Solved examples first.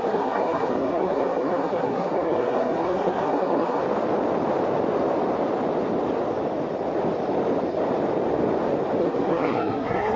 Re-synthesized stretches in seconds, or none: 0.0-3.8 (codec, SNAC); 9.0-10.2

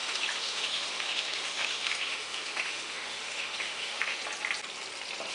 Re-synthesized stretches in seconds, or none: 0.0-4.2 (autoencoder, DAC-VAE)

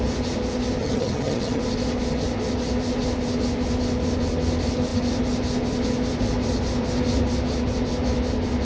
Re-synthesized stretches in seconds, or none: 0.8-1.6 (vocoder, HiFi-GAN)